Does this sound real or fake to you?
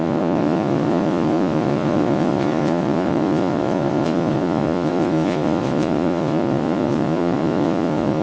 fake